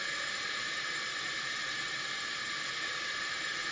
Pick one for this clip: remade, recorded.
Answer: remade